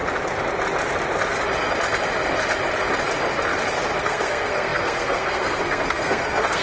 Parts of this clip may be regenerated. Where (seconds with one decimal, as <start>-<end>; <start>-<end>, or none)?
4.0-6.6